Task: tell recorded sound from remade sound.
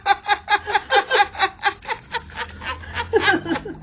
recorded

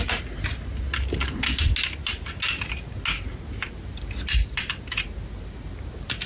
recorded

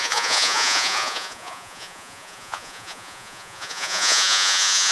remade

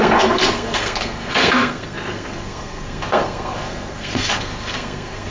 remade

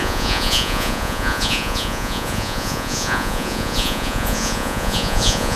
remade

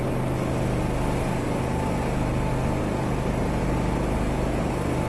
recorded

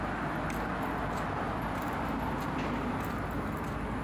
recorded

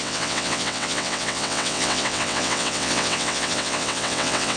remade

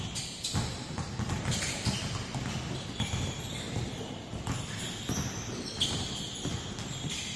remade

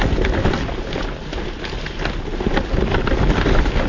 recorded